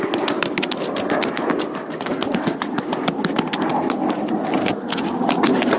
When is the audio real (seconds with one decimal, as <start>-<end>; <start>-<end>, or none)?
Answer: 0.0-5.8